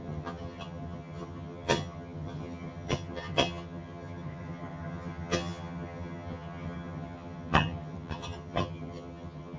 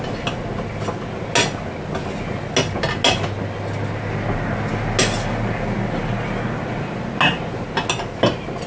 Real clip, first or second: second